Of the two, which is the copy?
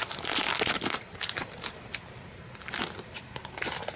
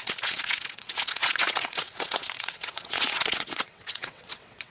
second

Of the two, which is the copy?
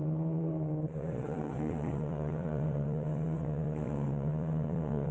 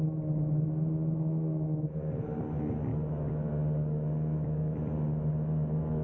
first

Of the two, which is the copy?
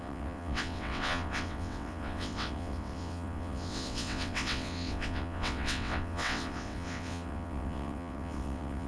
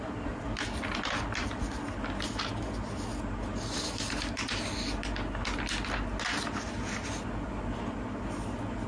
first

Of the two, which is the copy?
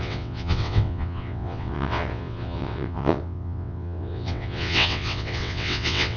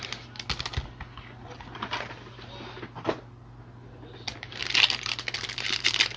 first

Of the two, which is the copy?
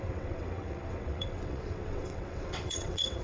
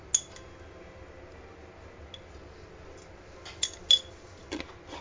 first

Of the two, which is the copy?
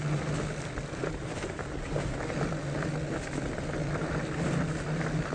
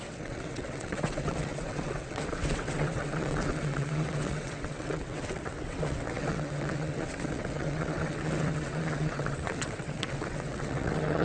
second